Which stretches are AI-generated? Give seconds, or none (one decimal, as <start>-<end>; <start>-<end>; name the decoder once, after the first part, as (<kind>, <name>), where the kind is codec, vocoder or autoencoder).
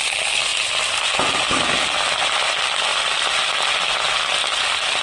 none